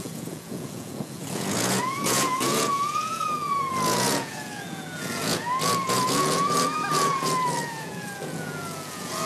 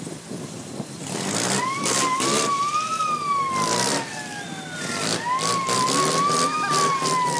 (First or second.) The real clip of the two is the second